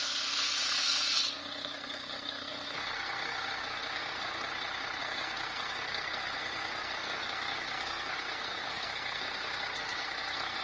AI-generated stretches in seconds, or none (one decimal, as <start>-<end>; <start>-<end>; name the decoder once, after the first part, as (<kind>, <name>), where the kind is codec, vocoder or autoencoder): 0.0-4.5 (codec, SNAC); 5.0-10.6